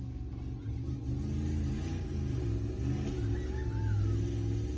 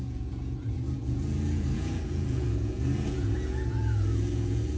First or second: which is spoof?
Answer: second